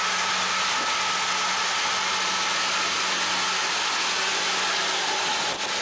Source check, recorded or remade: recorded